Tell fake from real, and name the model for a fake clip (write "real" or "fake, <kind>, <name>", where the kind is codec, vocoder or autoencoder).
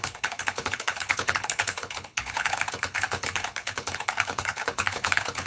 fake, codec, HILCodec